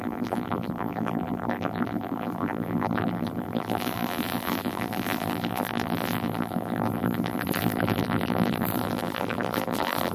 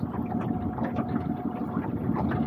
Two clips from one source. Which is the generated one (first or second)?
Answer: first